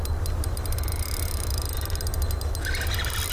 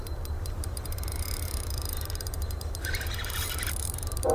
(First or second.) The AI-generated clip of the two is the second